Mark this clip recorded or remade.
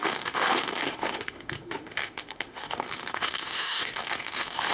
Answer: remade